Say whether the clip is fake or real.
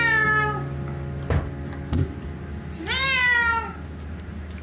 real